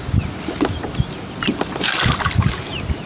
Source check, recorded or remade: recorded